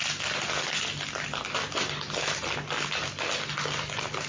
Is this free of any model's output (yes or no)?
yes